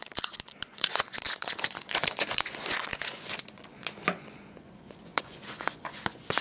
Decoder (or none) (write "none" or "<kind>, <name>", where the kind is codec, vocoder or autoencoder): vocoder, Vocos